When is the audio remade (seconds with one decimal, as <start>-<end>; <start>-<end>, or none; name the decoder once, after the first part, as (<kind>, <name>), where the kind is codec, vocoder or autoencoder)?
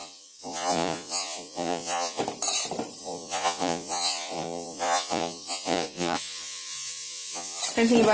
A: 0.0-2.2 (vocoder, Vocos); 3.0-7.6